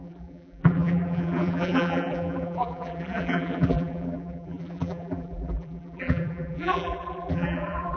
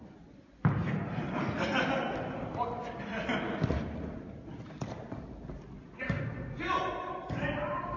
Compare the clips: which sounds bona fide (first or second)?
second